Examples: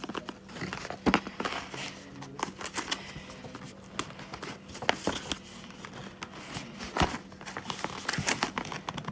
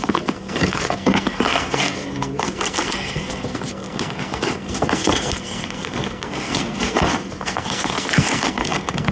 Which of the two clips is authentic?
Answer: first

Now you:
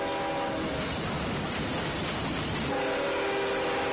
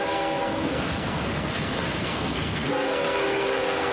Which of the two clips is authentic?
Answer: first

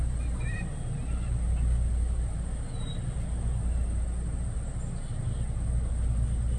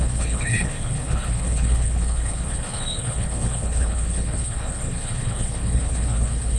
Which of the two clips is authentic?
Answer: first